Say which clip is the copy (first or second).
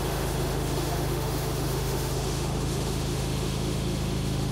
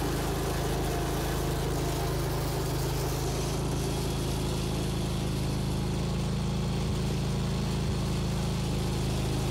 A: first